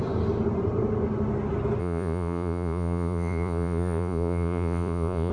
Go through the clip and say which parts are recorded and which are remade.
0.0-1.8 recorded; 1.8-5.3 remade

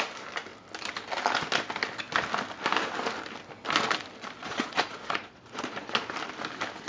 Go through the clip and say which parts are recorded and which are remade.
0.0-4.4 recorded; 4.4-6.0 remade; 6.0-6.9 recorded

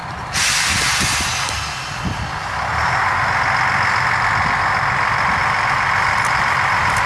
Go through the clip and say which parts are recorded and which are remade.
0.0-7.1 recorded

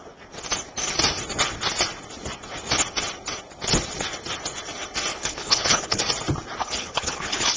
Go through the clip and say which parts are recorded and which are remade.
0.0-5.1 recorded; 5.1-6.0 remade; 6.0-6.6 recorded; 6.6-7.6 remade

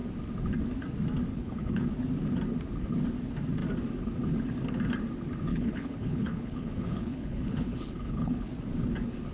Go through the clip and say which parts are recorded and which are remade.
0.0-1.3 recorded; 1.3-1.9 remade; 1.9-5.5 recorded; 5.5-8.5 remade; 8.5-9.3 recorded

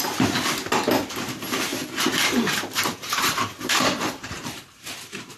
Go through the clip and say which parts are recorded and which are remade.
0.0-1.7 recorded; 1.7-4.9 remade; 4.9-5.4 recorded